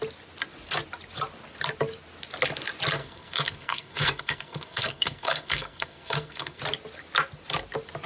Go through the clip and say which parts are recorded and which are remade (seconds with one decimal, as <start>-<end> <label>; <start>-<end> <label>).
0.0-3.0 recorded; 3.0-6.6 remade; 6.6-8.1 recorded